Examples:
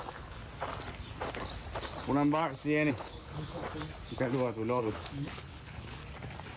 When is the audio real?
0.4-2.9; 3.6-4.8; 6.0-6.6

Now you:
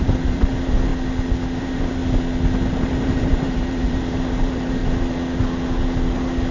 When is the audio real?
0.9-1.6; 2.0-2.7; 4.8-6.5